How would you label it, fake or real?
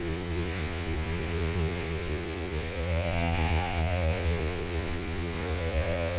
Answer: fake